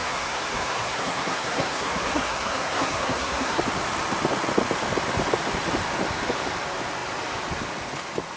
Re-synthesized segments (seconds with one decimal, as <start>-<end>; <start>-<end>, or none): 0.0-3.6